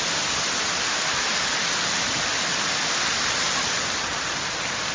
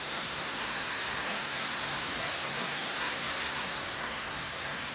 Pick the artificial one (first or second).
second